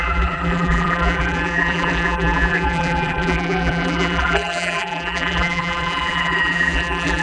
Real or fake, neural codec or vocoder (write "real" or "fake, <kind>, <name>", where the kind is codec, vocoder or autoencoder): fake, vocoder, BigVGAN v2